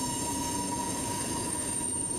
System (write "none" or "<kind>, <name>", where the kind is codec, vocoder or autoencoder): vocoder, Vocos